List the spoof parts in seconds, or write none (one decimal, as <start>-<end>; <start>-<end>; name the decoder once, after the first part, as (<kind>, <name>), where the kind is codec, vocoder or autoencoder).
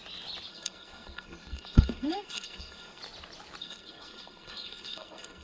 0.5-3.0 (codec, SNAC); 3.6-5.4